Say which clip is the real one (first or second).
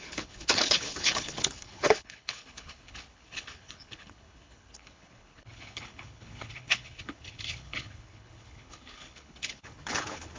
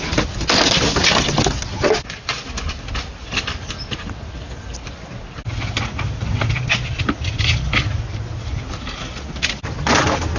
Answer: second